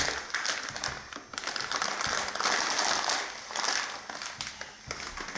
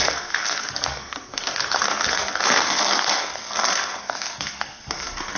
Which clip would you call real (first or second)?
first